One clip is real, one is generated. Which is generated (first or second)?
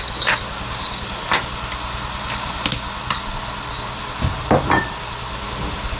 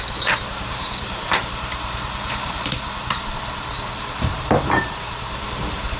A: second